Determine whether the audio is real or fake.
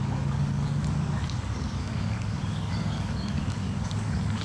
fake